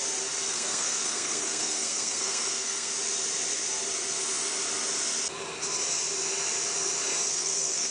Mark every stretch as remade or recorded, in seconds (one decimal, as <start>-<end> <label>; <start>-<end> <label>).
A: 0.0-0.5 recorded; 0.5-2.9 remade; 2.9-7.3 recorded; 7.3-7.9 remade